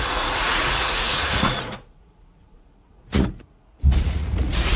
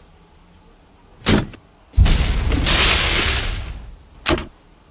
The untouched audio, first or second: second